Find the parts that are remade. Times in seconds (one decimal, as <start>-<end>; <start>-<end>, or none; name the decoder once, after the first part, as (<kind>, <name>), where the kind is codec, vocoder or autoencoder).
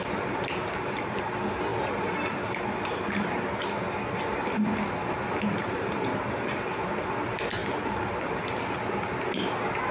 none